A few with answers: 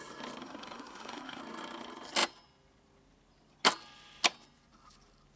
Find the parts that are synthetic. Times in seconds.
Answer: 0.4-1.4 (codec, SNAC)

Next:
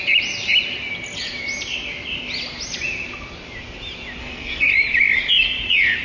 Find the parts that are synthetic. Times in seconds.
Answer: 4.2-4.7 (codec, SNAC)

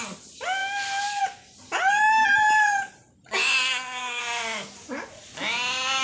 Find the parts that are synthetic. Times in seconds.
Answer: 3.6-4.2 (codec, SNAC)

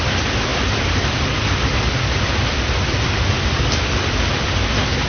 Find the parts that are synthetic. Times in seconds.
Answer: none